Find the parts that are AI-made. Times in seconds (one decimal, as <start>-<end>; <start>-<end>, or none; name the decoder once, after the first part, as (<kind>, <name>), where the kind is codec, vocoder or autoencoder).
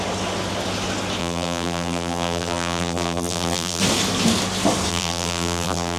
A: 1.2-3.8 (vocoder, BigVGAN v2); 4.9-6.0